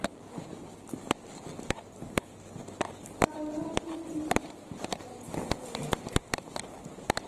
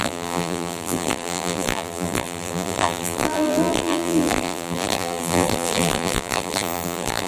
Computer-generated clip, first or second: second